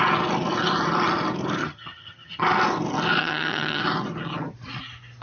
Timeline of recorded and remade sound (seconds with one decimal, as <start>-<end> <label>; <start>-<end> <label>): 0.0-1.6 recorded; 1.6-2.4 remade; 2.4-3.2 recorded; 3.2-3.8 remade; 3.8-5.2 recorded